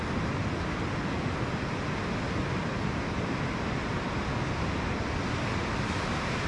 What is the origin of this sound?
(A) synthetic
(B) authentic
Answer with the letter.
B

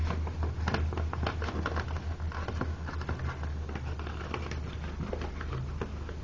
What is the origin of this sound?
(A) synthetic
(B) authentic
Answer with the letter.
B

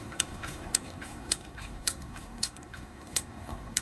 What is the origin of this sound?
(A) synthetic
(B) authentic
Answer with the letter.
A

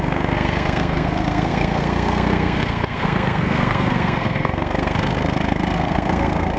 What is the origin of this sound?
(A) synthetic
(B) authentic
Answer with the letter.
A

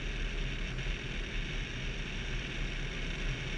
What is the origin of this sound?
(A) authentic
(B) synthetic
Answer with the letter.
A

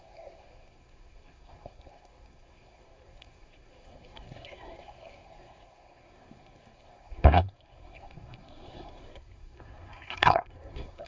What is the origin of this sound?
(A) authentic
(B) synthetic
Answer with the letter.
B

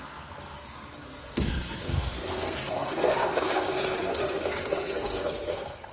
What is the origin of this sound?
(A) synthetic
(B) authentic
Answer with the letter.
A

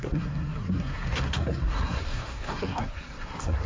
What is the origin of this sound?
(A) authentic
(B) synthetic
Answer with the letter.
B